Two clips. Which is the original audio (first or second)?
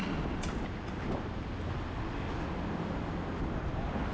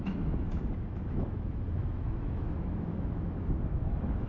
first